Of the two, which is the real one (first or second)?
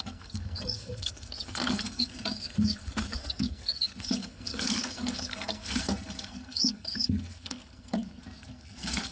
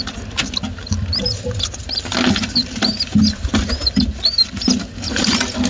second